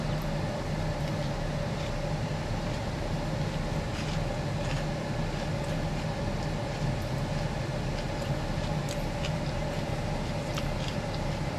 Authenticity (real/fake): real